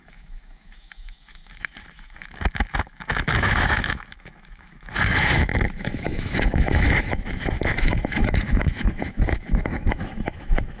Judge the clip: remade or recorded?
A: remade